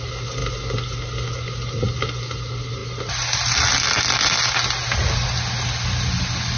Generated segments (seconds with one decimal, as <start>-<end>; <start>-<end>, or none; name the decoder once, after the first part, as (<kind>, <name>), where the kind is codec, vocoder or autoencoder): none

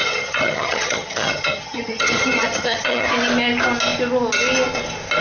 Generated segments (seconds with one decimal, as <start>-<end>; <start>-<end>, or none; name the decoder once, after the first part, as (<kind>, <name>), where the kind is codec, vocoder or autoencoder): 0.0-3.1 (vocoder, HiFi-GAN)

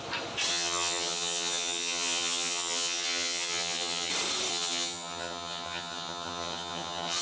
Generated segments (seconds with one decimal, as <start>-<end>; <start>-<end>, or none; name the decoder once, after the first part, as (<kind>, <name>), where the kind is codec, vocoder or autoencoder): 0.5-4.1 (vocoder, HiFi-GAN); 4.5-7.2

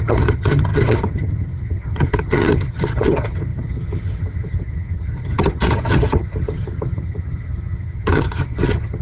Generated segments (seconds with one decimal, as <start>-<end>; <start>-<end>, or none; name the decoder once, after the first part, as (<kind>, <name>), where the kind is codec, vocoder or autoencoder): 0.0-9.0 (vocoder, HiFi-GAN)

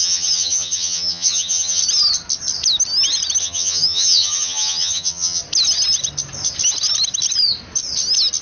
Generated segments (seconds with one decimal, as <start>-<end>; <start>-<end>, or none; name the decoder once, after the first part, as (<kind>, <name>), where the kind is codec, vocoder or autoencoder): 0.0-1.8 (vocoder, HiFi-GAN); 3.4-5.4

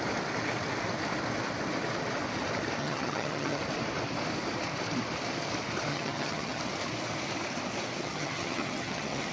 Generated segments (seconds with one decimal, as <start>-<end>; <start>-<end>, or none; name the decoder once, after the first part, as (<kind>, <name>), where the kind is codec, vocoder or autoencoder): 2.8-3.6 (vocoder, HiFi-GAN); 5.9-6.6; 8.0-9.3

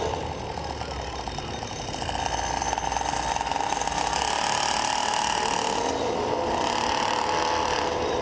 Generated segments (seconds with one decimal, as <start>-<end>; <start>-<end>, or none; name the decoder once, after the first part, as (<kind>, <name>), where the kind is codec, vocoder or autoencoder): none

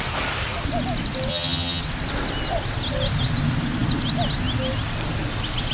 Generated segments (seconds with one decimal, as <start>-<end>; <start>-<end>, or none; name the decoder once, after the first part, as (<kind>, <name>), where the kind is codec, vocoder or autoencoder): 1.3-1.8 (vocoder, HiFi-GAN)